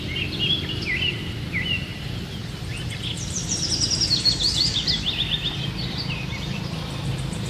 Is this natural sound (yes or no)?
no